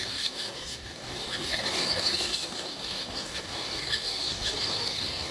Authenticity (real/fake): fake